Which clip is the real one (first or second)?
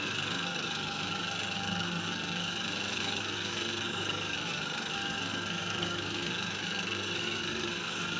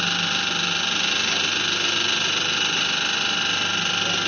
second